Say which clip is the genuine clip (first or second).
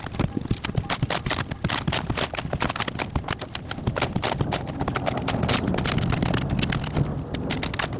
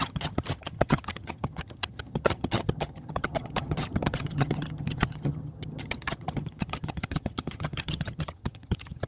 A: first